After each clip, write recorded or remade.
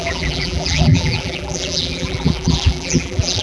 remade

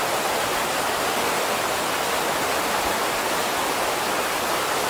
recorded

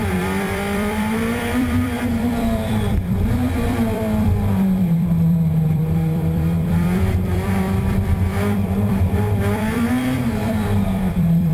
remade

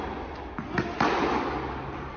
recorded